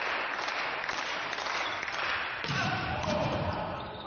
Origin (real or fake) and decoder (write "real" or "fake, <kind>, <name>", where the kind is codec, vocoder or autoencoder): real